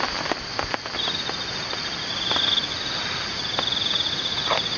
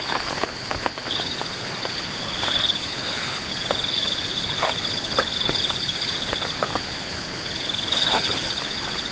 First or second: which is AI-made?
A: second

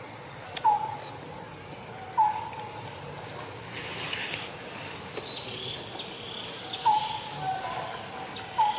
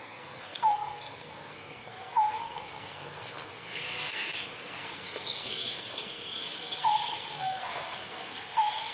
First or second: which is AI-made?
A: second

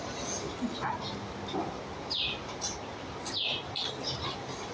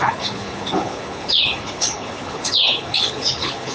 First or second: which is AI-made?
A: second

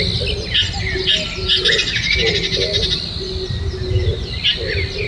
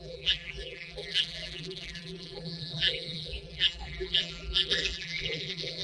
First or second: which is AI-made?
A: second